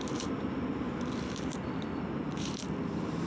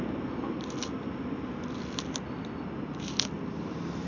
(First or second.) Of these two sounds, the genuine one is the second